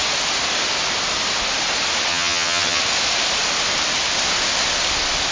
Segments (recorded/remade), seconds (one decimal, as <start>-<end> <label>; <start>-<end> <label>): 0.0-2.1 recorded; 2.1-2.8 remade; 2.8-5.3 recorded